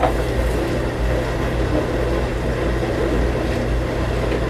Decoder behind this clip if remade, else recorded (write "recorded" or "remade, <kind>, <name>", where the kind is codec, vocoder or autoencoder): recorded